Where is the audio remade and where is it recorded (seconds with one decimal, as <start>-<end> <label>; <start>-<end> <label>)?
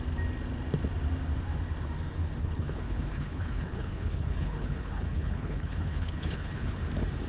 0.0-2.4 recorded; 2.4-6.8 remade; 6.8-7.3 recorded